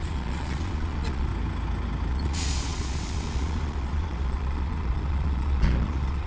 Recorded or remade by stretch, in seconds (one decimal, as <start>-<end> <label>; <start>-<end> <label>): 0.0-1.3 remade; 1.3-2.1 recorded; 2.1-6.3 remade